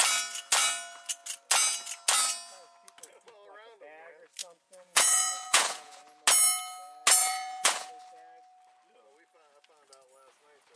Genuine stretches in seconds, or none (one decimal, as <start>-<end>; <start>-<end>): 0.0-4.4; 6.0-7.2; 7.9-10.8

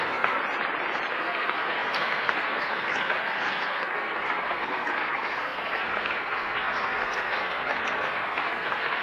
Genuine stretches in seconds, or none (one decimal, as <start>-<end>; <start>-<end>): 0.4-1.1

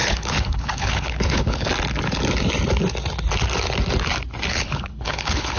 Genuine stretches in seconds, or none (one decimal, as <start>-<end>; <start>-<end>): 1.7-4.5

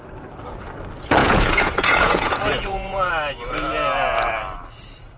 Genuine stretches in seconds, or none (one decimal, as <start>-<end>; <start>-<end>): 0.0-1.2; 3.1-5.2

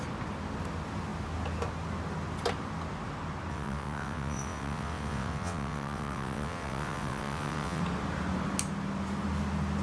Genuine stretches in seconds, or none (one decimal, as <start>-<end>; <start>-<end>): 0.0-3.5; 7.8-9.8